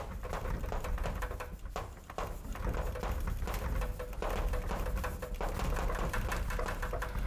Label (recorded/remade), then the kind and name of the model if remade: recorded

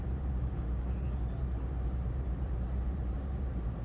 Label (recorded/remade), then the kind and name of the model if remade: remade, vocoder, BigVGAN v2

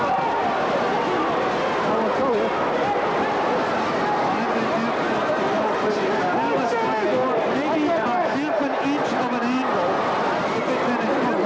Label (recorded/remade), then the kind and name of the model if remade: recorded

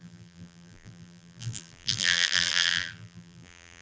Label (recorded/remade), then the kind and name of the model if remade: remade, vocoder, BigVGAN v2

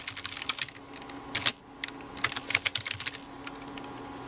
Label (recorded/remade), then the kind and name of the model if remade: recorded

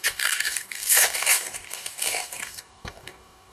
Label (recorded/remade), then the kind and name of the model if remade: remade, codec, DAC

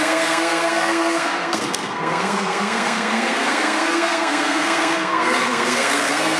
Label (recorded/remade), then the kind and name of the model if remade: remade, codec, SNAC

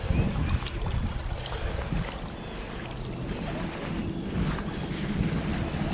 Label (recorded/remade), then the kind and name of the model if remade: recorded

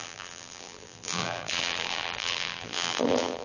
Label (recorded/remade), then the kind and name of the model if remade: remade, vocoder, BigVGAN v2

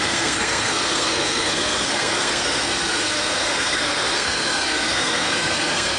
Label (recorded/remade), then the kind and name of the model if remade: remade, codec, SNAC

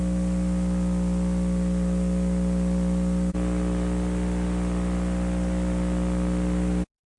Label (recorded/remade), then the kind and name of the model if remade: recorded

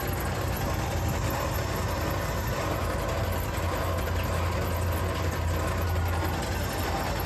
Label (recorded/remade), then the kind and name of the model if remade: recorded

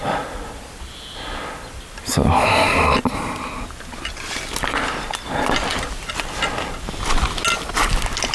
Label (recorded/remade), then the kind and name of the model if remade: recorded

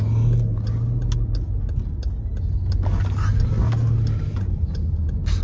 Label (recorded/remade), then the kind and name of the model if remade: recorded